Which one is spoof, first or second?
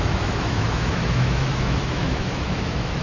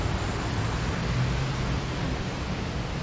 first